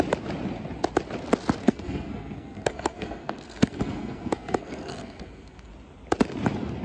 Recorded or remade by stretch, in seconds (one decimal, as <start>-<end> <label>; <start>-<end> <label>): 0.0-1.6 recorded; 1.6-5.7 remade; 5.7-6.8 recorded